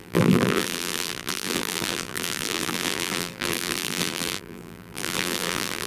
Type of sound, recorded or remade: remade